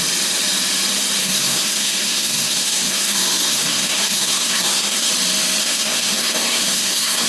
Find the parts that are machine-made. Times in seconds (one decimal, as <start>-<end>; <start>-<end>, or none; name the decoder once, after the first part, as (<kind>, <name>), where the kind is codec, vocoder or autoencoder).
1.2-5.1 (codec, SNAC); 5.6-7.3